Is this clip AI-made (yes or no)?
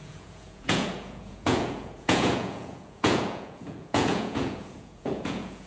yes